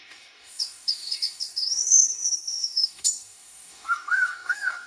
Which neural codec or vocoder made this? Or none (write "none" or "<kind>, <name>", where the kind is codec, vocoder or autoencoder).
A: codec, DAC